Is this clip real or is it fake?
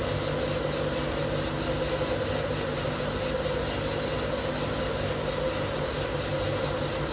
real